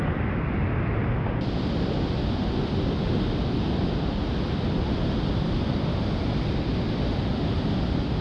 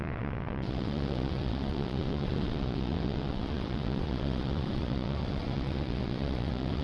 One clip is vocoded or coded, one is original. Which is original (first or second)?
first